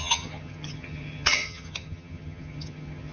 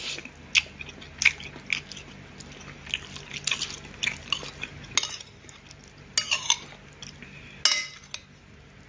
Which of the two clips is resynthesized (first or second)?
first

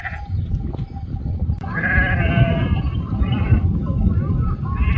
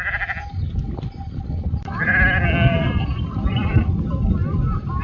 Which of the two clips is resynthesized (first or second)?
first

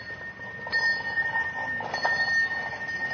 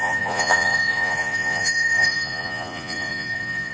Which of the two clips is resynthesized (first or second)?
second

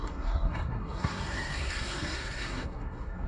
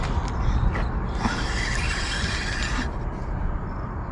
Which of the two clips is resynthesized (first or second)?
first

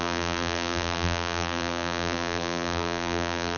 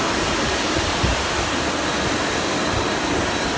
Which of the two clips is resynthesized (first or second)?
first